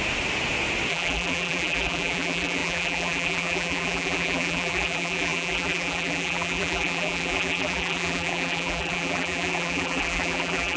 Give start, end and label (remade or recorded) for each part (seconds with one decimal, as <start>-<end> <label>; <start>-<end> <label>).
0.0-0.9 recorded; 0.9-10.8 remade